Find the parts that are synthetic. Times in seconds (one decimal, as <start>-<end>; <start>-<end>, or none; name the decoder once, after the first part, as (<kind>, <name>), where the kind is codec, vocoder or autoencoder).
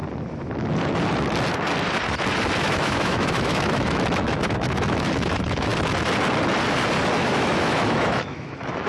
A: 2.6-5.7 (autoencoder, DAC-VAE); 7.2-8.9